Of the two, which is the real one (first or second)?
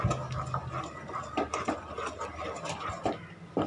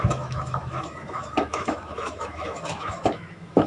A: first